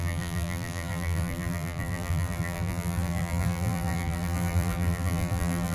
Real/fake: fake